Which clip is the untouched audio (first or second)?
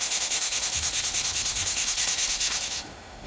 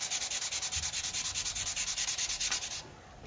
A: second